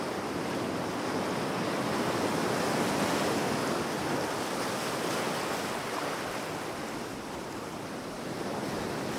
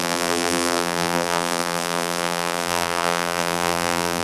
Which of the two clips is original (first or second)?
first